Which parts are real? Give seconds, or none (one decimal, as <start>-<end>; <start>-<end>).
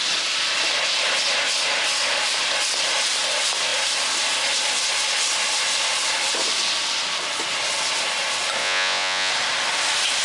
0.0-8.6; 9.3-10.2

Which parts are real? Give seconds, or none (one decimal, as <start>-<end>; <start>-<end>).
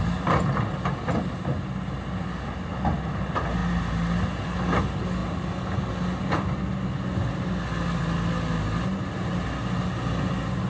0.0-10.7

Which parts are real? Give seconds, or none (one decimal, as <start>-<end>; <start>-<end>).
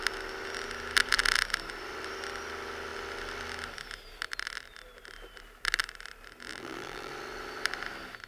0.0-6.5; 7.1-8.3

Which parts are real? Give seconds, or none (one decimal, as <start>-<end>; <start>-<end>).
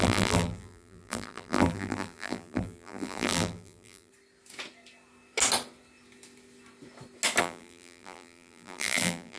4.1-7.4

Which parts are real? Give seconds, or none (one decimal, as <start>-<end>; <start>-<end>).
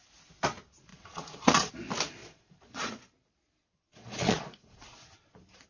0.0-0.9; 1.7-2.2; 2.9-3.6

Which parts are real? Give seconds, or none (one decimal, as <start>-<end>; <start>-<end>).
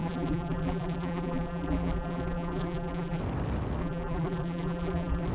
3.2-3.8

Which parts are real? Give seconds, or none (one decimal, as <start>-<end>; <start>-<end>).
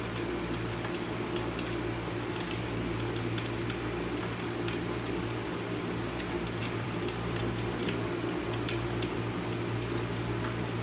0.0-6.6; 7.4-10.8